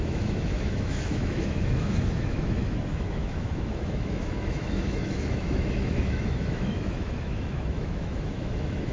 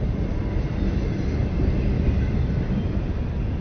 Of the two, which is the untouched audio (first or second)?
second